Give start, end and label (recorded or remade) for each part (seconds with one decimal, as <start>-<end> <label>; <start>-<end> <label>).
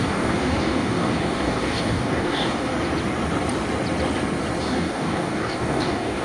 0.0-2.7 remade; 2.7-4.6 recorded; 4.6-6.2 remade